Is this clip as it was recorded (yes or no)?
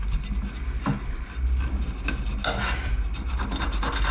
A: yes